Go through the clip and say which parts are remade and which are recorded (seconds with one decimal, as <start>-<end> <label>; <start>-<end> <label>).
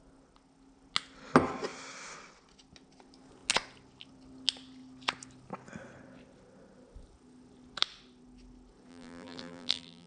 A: 0.0-8.9 recorded; 8.9-10.1 remade